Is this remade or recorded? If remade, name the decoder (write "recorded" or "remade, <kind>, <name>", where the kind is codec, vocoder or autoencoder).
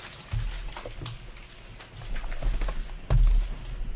recorded